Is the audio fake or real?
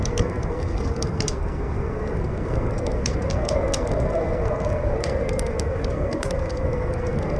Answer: fake